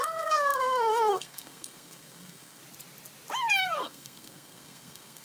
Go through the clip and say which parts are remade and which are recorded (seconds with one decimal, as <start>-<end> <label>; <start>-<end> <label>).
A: 0.0-2.6 remade; 2.6-3.6 recorded; 3.6-5.2 remade